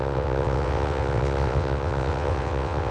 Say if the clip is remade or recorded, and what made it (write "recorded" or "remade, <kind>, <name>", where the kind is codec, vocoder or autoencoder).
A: remade, vocoder, WaveNeXt